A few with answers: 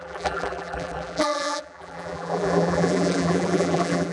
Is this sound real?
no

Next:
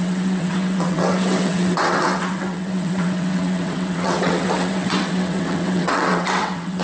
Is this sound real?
no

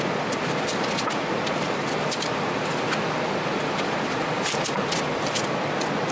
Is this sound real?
yes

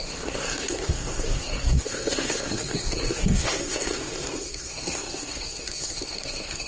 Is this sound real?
no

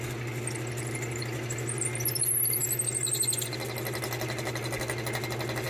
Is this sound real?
yes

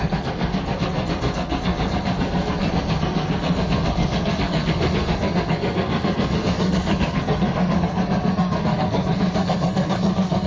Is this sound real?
no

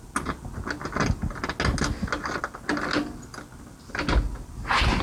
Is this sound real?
yes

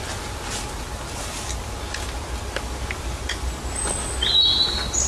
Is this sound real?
yes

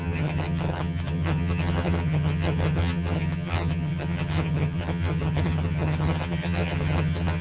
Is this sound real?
no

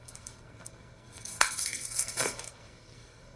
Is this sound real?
no